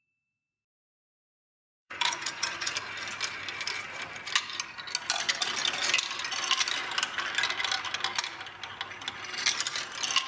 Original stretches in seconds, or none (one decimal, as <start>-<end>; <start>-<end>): 0.0-1.3; 2.7-10.3

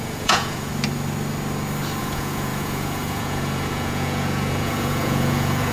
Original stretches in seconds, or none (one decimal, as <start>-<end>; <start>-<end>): 0.7-2.0

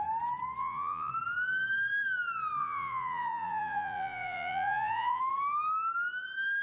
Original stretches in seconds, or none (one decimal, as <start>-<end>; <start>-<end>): 0.0-0.6; 1.1-2.6; 5.2-6.6

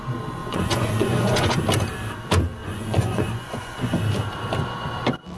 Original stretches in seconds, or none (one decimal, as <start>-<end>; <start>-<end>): 0.0-0.4; 1.6-2.6; 4.0-5.4

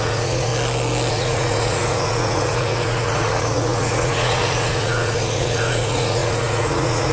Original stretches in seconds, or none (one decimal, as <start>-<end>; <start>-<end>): 0.5-1.1

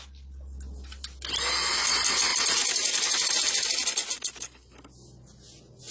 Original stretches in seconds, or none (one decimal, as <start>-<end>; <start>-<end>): 0.0-5.9